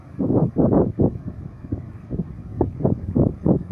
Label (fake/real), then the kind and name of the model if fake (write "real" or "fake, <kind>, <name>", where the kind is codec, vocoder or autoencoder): fake, codec, DAC